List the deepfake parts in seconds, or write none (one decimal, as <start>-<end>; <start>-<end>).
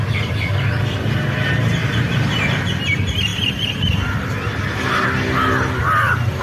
1.8-2.6